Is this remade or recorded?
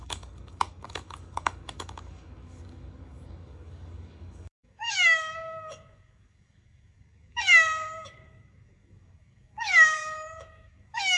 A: remade